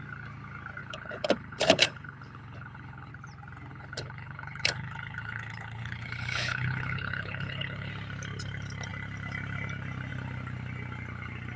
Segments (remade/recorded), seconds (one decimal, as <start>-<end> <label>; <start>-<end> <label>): 0.0-0.8 recorded; 0.8-3.1 remade; 3.1-3.7 recorded; 3.7-7.9 remade; 7.9-11.6 recorded

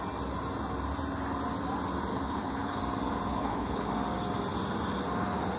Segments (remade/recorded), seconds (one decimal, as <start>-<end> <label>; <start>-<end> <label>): 0.0-2.1 recorded; 2.1-2.8 remade; 2.8-3.3 recorded; 3.3-3.9 remade; 3.9-5.6 recorded

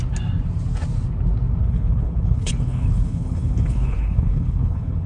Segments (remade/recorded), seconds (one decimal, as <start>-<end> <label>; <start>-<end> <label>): 0.0-1.6 recorded; 1.6-5.1 remade